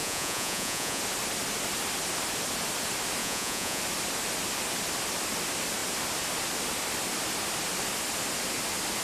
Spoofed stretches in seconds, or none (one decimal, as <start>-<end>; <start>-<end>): 0.0-1.0; 3.2-3.8